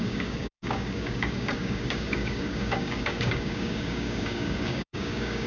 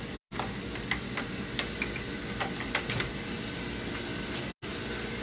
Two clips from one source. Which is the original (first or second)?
second